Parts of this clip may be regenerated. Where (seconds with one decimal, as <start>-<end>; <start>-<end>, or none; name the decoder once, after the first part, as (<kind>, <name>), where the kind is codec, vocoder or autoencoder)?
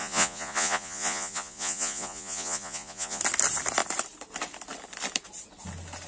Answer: 0.0-3.2 (vocoder, Vocos)